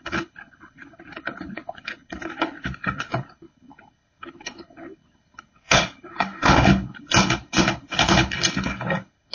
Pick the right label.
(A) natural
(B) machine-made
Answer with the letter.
B